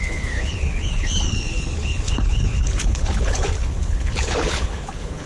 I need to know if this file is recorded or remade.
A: remade